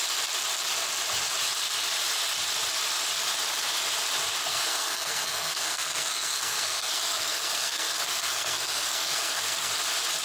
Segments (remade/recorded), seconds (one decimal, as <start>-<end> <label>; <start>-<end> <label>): 0.0-4.5 recorded; 4.5-9.7 remade; 9.7-10.2 recorded